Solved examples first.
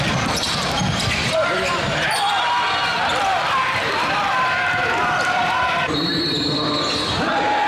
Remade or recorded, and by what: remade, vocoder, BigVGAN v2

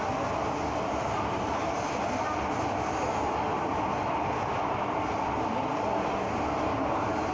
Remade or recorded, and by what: recorded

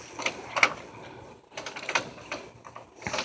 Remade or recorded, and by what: recorded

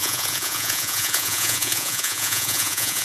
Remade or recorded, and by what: remade, vocoder, Vocos